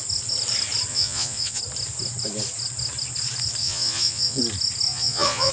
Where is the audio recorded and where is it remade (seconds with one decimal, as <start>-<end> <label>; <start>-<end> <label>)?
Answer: 0.0-0.9 recorded; 0.9-1.6 remade; 1.6-3.6 recorded; 3.6-4.4 remade; 4.4-4.9 recorded; 4.9-5.5 remade